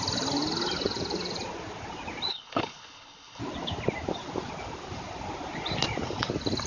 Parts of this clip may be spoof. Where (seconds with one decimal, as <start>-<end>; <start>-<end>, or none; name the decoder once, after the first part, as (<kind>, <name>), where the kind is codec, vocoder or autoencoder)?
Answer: 2.3-3.4 (codec, HILCodec)